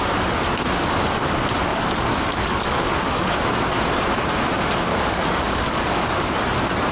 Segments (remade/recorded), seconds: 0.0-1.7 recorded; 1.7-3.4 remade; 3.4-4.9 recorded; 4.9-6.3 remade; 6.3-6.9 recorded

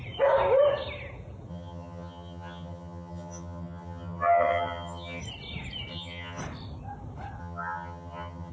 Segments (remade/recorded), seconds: 0.0-1.5 recorded; 1.5-5.2 remade; 5.2-5.9 recorded; 5.9-6.4 remade; 6.4-7.4 recorded; 7.4-8.5 remade

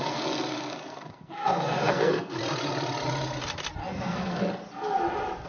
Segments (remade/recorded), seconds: 0.0-2.4 remade; 2.4-3.8 recorded; 3.8-4.5 remade; 4.5-5.5 recorded

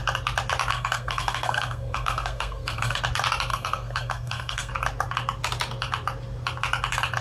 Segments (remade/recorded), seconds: 0.0-0.7 recorded; 0.7-3.0 remade; 3.0-3.5 recorded; 3.5-4.7 remade; 4.7-7.2 recorded